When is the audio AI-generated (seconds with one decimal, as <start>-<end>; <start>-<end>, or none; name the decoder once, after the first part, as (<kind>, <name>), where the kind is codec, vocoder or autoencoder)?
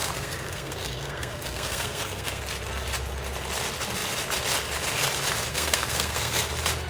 0.0-2.4 (codec, SNAC); 5.5-6.4